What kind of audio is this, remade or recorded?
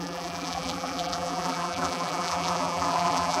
remade